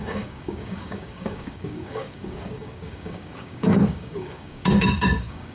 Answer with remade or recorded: remade